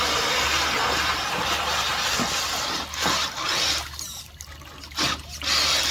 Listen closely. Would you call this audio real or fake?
real